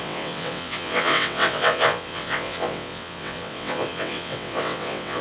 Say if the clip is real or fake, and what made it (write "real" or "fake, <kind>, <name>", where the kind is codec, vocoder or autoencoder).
fake, vocoder, WaveNeXt